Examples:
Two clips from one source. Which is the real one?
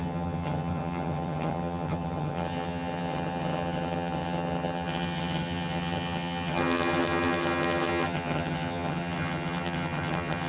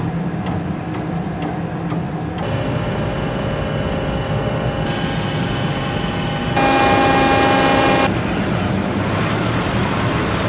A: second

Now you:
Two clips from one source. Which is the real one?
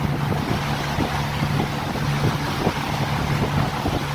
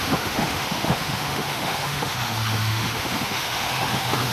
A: first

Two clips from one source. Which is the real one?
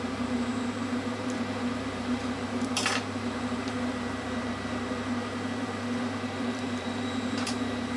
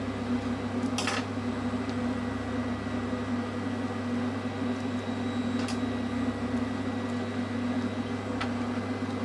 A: second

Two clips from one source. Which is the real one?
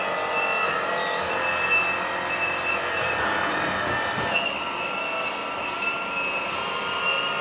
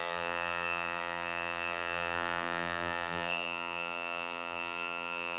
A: first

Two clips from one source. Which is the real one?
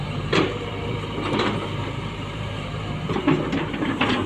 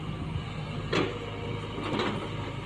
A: second